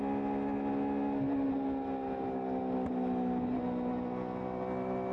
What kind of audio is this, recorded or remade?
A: recorded